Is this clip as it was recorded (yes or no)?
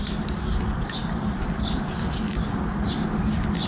yes